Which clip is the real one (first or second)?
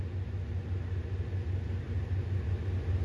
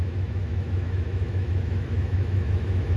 first